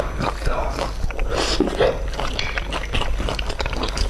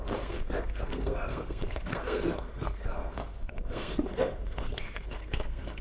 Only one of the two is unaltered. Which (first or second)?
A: first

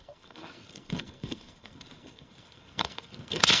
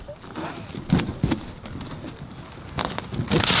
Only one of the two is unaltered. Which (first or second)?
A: second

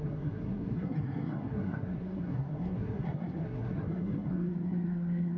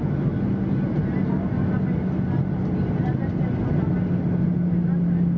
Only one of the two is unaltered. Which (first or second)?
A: second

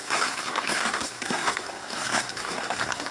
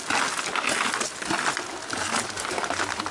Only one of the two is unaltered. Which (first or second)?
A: second